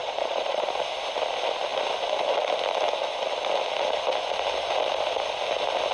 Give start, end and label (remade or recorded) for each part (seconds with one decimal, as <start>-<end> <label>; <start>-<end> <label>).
0.0-0.7 remade; 0.7-5.9 recorded